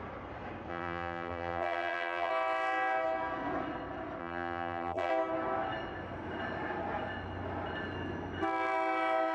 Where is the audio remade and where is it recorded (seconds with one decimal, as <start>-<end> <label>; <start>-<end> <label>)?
0.0-0.7 recorded; 0.7-2.3 remade; 2.3-4.2 recorded; 4.2-5.1 remade; 5.1-9.3 recorded